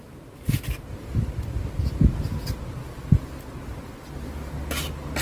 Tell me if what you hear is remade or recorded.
recorded